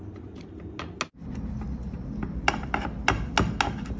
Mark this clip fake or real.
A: real